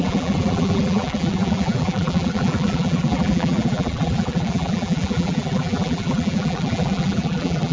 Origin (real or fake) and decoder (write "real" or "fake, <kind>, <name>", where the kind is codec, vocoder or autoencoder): fake, vocoder, BigVGAN v2